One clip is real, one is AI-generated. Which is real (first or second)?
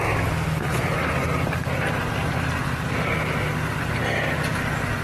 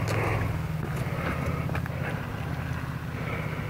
second